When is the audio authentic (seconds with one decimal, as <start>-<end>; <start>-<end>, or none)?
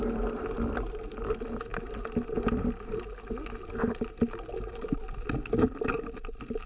0.0-6.7